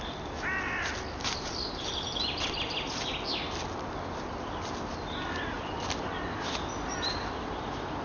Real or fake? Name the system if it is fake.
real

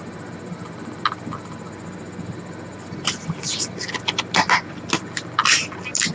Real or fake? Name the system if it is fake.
real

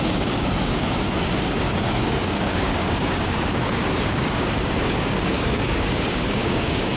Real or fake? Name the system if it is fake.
fake, codec, DAC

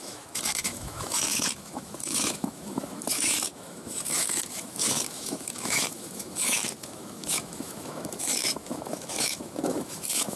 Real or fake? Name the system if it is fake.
fake, autoencoder, DAC-VAE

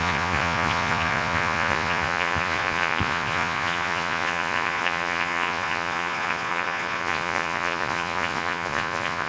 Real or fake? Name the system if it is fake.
fake, vocoder, Vocos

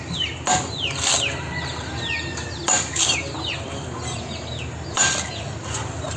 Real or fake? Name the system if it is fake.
fake, vocoder, BigVGAN v2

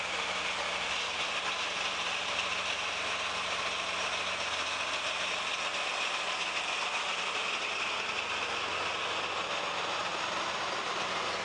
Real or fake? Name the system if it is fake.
real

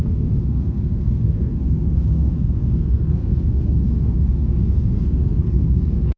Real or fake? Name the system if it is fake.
fake, codec, SNAC